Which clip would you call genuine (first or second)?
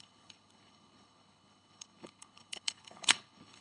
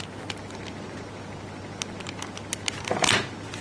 second